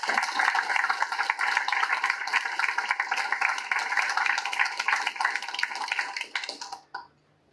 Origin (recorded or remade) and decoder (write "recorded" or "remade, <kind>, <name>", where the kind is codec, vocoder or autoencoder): recorded